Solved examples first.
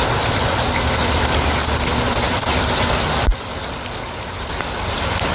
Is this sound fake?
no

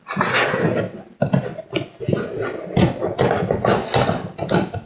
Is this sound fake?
no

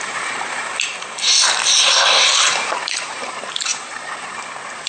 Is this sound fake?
yes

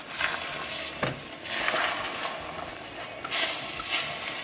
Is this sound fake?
no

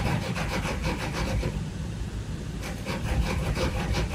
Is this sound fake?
yes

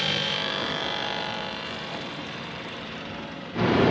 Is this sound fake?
yes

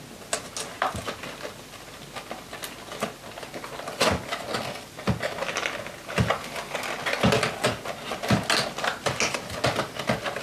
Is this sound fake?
no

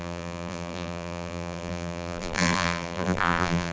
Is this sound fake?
yes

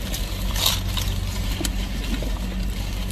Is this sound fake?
no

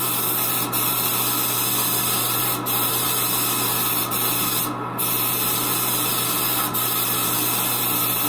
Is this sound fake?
no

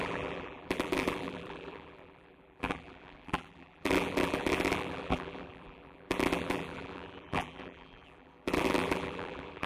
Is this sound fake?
yes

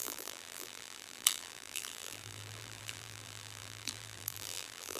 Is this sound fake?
yes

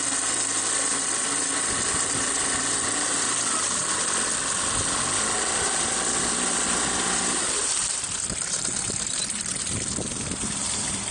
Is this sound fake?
no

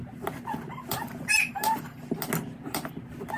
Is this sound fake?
no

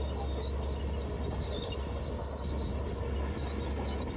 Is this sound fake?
no